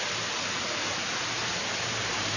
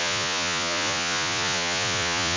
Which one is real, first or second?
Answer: first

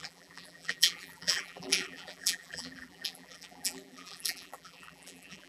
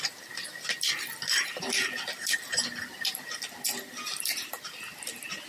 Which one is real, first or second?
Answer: second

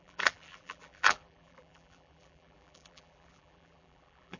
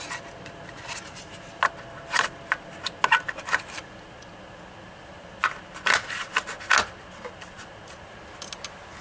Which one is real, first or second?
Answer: second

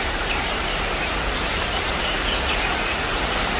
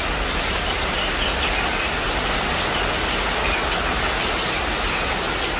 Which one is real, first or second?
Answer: second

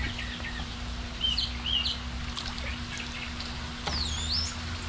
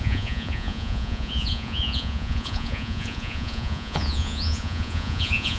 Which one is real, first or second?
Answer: first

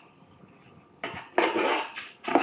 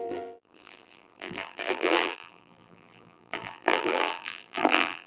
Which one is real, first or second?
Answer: first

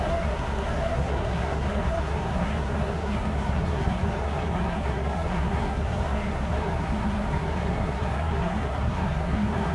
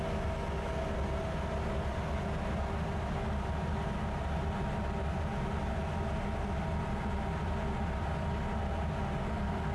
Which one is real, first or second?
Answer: second